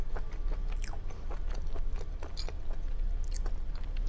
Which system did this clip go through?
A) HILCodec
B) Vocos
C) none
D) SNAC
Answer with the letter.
C